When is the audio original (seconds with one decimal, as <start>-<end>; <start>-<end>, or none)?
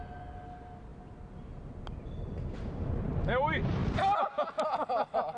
0.0-5.4